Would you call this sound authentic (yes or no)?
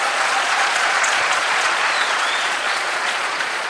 no